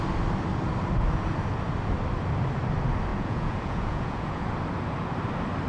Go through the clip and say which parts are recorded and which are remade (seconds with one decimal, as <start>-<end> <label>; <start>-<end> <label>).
0.0-3.1 recorded; 3.1-4.4 remade; 4.4-5.7 recorded

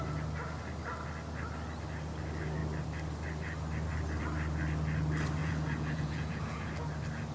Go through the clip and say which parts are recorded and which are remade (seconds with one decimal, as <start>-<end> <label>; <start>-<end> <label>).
0.0-5.4 recorded; 5.4-6.7 remade; 6.7-7.3 recorded

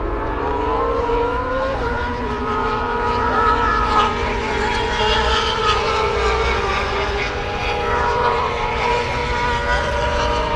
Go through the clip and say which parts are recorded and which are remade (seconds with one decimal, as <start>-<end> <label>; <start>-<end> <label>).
0.0-9.2 remade; 9.2-9.8 recorded; 9.8-10.6 remade

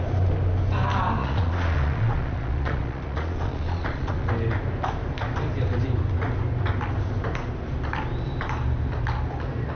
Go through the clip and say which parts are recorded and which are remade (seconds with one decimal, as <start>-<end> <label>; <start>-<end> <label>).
0.0-1.2 recorded; 1.2-4.3 remade; 4.3-9.8 recorded

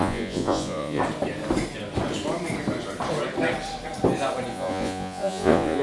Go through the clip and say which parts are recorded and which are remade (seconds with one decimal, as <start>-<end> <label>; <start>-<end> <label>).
0.0-1.0 remade; 1.0-4.5 recorded; 4.5-5.8 remade

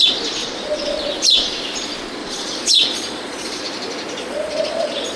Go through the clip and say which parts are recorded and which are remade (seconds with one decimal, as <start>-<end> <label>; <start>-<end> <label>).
0.0-0.4 recorded; 0.4-1.0 remade; 1.0-2.2 recorded; 2.2-3.6 remade; 3.6-4.2 recorded; 4.2-5.2 remade